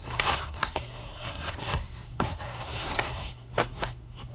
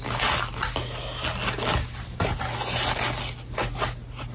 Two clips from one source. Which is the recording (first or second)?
second